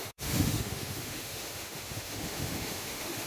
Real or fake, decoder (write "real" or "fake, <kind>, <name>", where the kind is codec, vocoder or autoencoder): fake, autoencoder, DAC-VAE